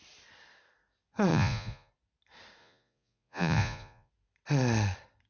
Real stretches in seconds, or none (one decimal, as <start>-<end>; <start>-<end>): 0.0-1.3; 1.9-2.6; 4.1-5.3